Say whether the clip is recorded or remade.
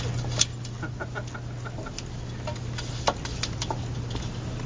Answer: recorded